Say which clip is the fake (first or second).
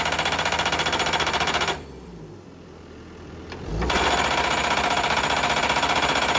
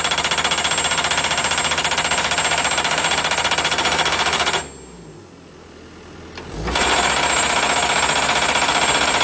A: first